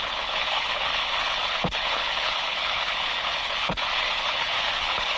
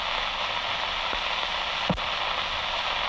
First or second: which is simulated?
first